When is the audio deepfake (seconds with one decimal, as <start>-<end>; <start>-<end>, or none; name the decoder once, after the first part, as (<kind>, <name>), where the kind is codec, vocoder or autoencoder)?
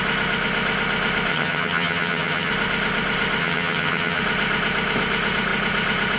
1.3-2.5 (vocoder, HiFi-GAN); 3.4-4.2